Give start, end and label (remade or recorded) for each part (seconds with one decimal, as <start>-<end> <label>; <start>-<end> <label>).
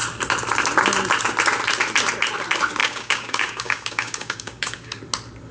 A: 0.0-2.8 recorded; 2.8-5.0 remade; 5.0-5.5 recorded